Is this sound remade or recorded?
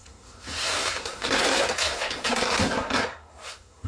remade